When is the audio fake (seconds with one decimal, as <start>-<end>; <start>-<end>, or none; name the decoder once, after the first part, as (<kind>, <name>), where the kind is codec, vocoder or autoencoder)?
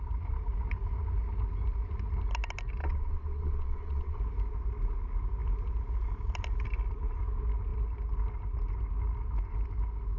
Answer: 2.8-4.2 (vocoder, WaveNeXt)